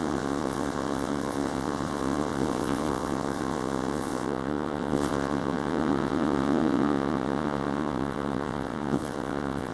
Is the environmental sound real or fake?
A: fake